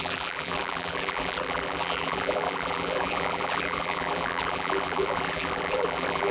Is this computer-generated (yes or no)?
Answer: yes